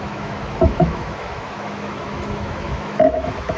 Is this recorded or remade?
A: remade